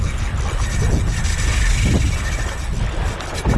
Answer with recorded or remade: recorded